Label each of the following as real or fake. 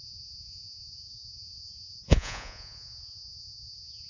fake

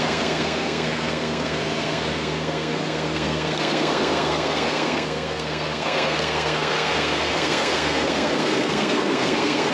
fake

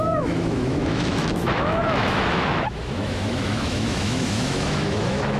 fake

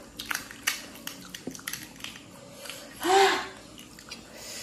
real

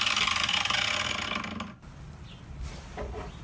real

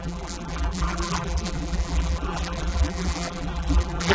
fake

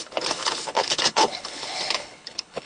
fake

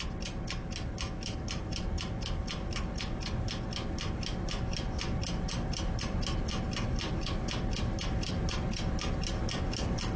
real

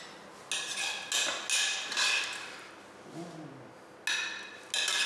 real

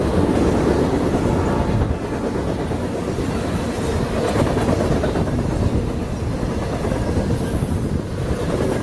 real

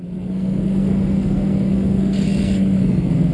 fake